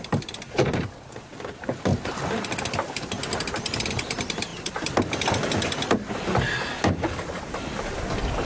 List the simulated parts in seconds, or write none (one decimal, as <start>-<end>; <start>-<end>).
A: none